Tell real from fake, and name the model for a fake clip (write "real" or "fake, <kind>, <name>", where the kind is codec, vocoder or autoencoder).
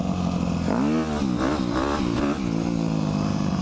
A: real